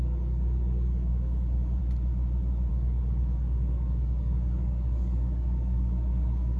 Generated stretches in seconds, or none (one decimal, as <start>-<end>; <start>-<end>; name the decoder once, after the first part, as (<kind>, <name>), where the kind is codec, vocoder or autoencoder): 0.0-1.8 (codec, DAC); 2.7-6.6